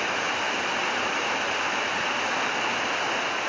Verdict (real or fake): real